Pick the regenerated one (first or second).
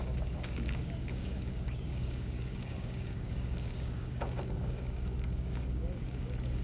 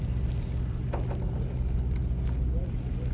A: first